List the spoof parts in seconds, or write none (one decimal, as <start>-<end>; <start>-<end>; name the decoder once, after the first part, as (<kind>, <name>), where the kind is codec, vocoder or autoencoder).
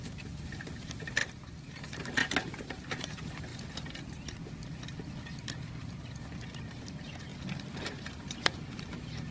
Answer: 0.0-1.2 (vocoder, BigVGAN v2); 1.8-3.5; 6.8-7.3; 7.8-9.3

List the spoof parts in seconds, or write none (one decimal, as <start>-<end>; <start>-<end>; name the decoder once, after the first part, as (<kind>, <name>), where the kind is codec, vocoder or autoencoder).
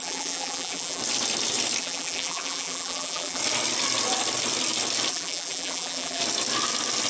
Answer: 0.0-1.0 (vocoder, BigVGAN v2); 1.8-3.4; 5.1-6.2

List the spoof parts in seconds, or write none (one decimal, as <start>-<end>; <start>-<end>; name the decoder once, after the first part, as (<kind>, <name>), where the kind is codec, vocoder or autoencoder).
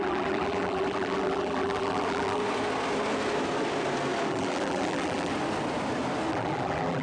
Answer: 0.0-2.4 (vocoder, BigVGAN v2); 4.3-5.3; 6.3-7.0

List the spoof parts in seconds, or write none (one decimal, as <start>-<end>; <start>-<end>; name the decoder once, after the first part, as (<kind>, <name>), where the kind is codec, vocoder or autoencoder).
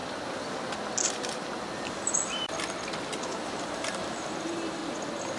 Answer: 3.2-4.8 (vocoder, BigVGAN v2)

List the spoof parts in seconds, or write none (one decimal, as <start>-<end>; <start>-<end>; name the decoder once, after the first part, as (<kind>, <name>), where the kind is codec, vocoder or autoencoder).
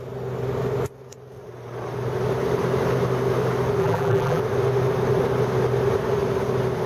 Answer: 3.8-4.4 (vocoder, BigVGAN v2)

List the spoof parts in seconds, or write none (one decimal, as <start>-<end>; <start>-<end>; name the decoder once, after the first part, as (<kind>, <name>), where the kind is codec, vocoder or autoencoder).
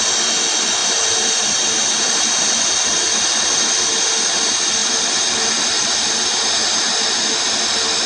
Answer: 0.8-1.5 (vocoder, BigVGAN v2); 1.9-3.1